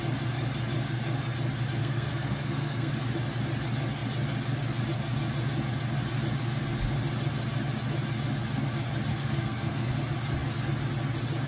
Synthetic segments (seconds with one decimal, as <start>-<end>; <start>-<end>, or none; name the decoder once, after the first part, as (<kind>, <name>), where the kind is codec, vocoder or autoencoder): 1.8-2.9 (codec, SNAC); 9.1-9.9